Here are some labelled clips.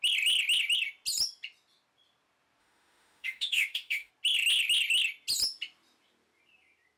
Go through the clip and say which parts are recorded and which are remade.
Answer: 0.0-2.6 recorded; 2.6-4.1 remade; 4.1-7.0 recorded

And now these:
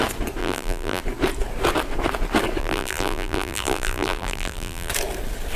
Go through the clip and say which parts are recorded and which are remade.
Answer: 0.0-0.4 recorded; 0.4-1.0 remade; 1.0-2.6 recorded; 2.6-4.9 remade; 4.9-5.6 recorded

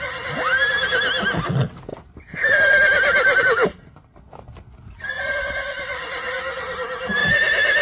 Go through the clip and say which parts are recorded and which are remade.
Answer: 0.0-1.9 recorded; 1.9-3.4 remade; 3.4-7.2 recorded; 7.2-7.8 remade

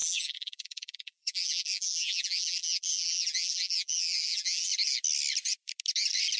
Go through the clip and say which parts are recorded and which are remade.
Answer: 0.0-4.7 remade; 4.7-6.4 recorded

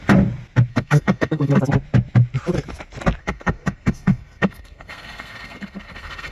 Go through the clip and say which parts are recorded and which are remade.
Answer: 0.0-0.7 recorded; 0.7-1.6 remade; 1.6-3.2 recorded; 3.2-6.3 remade

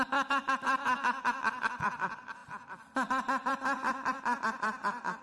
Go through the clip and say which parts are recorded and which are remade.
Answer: 0.0-5.2 recorded

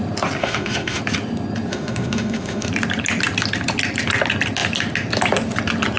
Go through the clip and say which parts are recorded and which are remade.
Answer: 0.0-0.4 recorded; 0.4-1.0 remade; 1.0-1.7 recorded; 1.7-2.7 remade; 2.7-6.0 recorded

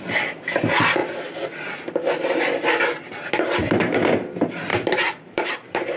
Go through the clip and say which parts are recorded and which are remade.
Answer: 0.0-4.7 recorded; 4.7-6.0 remade